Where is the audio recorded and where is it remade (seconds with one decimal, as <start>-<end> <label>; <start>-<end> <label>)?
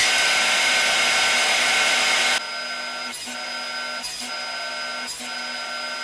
0.0-6.0 recorded